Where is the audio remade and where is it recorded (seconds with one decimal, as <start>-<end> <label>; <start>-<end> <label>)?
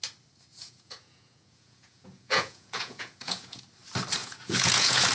0.0-0.5 recorded; 0.5-3.6 remade; 3.6-4.2 recorded; 4.2-5.1 remade